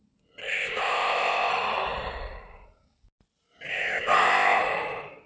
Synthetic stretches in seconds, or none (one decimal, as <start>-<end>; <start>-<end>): 0.4-1.5; 3.7-4.6